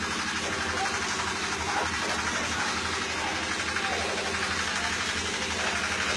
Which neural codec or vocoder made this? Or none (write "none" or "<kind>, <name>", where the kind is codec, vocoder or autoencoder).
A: none